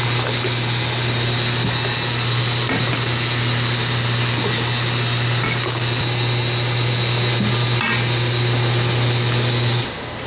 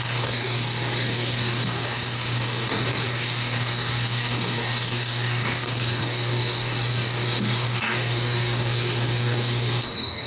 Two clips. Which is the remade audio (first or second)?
second